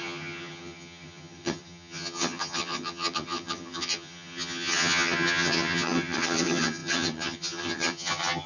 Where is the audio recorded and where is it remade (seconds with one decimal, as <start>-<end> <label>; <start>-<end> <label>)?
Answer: 0.0-8.5 remade

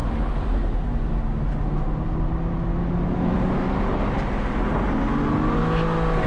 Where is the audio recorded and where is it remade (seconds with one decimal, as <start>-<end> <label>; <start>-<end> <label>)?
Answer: 0.0-6.3 recorded

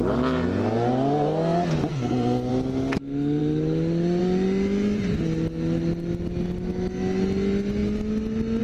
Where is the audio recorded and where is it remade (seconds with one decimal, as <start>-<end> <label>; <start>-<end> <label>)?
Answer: 0.0-1.9 recorded; 1.9-2.5 remade; 2.5-8.6 recorded

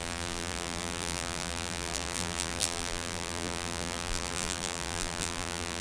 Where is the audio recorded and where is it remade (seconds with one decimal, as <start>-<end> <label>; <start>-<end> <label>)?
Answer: 0.0-5.8 remade

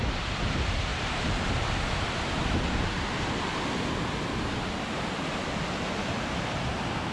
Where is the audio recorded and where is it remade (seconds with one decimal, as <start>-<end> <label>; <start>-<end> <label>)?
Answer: 0.0-7.1 recorded

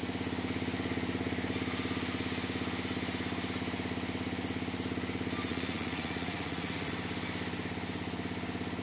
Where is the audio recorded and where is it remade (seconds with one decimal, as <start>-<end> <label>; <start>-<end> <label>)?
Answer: 0.0-5.5 recorded; 5.5-6.9 remade; 6.9-8.8 recorded

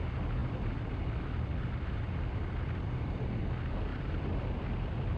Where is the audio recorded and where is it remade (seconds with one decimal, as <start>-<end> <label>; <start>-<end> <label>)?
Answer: 0.0-0.4 recorded; 0.4-3.5 remade; 3.5-3.9 recorded; 3.9-5.2 remade

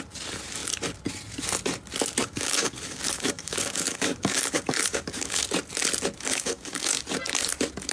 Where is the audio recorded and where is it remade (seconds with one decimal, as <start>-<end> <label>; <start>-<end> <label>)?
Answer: 0.0-2.2 recorded; 2.2-5.4 remade; 5.4-6.3 recorded; 6.3-7.0 remade; 7.0-7.9 recorded